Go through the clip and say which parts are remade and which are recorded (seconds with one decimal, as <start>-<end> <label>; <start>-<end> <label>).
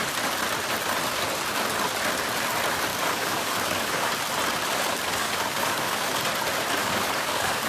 0.0-2.9 recorded; 2.9-4.1 remade; 4.1-5.2 recorded; 5.2-6.2 remade; 6.2-6.8 recorded; 6.8-7.7 remade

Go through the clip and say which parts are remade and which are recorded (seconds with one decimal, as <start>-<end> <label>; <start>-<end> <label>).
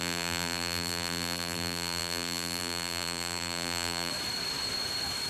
0.0-4.1 remade; 4.1-5.3 recorded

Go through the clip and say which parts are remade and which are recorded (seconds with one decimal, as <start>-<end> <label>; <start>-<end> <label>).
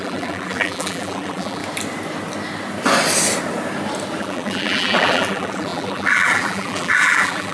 0.0-1.6 remade; 1.6-4.2 recorded; 4.2-7.5 remade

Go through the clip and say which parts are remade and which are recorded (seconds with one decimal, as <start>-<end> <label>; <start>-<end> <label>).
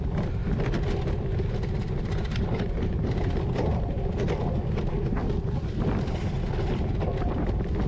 0.0-7.9 recorded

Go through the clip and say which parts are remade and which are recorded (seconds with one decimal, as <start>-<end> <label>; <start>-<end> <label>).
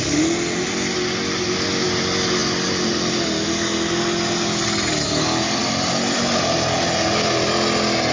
0.0-8.1 recorded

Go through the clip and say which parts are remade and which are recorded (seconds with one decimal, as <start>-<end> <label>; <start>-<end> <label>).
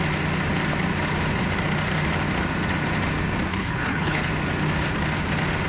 0.0-3.5 recorded; 3.5-4.3 remade; 4.3-5.7 recorded